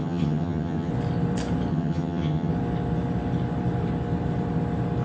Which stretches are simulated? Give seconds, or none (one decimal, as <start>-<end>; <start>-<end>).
0.0-0.9; 1.7-2.5